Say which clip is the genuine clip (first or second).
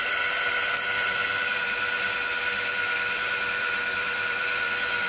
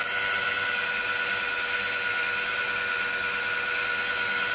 second